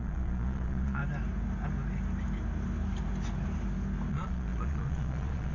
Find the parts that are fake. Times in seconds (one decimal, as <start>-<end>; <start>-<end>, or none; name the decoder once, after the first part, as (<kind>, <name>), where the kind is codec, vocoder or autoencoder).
0.0-1.0 (vocoder, Vocos); 4.1-5.5